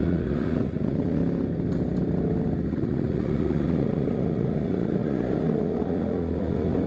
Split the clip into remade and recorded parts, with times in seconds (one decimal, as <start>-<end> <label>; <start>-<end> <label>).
0.0-1.2 remade; 1.2-2.7 recorded; 2.7-6.9 remade